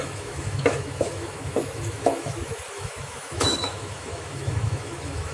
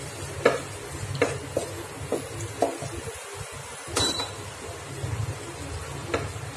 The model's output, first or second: first